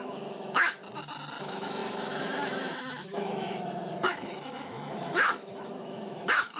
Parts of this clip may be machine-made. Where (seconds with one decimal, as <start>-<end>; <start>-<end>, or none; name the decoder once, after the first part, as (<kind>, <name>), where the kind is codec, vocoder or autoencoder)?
0.0-0.8 (autoencoder, DAC-VAE); 1.4-6.6

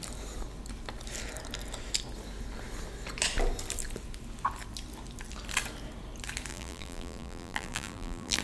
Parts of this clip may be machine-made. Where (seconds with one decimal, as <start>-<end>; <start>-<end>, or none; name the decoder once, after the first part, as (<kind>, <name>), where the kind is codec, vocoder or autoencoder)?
6.5-8.4 (vocoder, BigVGAN v2)

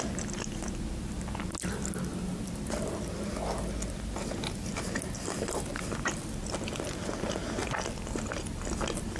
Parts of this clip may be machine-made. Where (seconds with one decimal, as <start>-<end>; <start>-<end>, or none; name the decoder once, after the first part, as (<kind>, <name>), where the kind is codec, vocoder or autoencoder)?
2.1-2.9 (vocoder, BigVGAN v2); 7.6-9.2

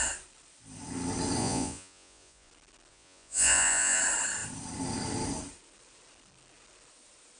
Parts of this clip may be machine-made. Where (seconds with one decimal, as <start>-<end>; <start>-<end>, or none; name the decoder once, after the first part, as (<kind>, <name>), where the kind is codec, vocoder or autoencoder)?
1.4-2.5 (vocoder, Vocos); 2.9-4.0

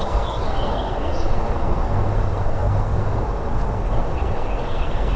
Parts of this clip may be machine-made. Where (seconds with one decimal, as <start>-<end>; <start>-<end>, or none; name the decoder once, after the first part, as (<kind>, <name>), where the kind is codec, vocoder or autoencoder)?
0.0-5.2 (codec, SNAC)

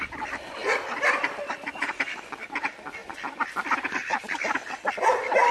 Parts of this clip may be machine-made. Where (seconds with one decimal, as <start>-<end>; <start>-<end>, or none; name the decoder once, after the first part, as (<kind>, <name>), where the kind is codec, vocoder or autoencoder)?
0.0-3.0 (vocoder, BigVGAN v2)

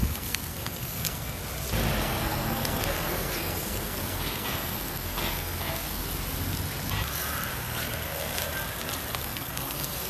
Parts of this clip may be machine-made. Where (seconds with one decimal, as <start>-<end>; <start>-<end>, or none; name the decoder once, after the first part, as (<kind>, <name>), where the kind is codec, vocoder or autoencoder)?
0.0-1.4 (codec, SNAC); 2.0-6.0; 7.5-8.4; 9.2-10.1

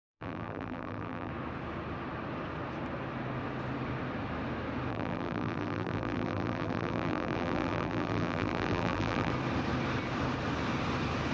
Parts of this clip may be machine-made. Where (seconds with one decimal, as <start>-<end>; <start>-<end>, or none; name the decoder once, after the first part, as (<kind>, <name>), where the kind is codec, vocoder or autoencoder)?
0.0-1.3 (vocoder, BigVGAN v2); 4.9-9.3